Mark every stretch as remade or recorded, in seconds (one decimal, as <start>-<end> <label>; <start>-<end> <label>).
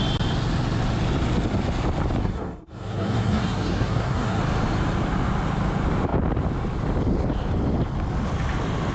0.0-2.2 recorded; 2.2-4.4 remade; 4.4-8.9 recorded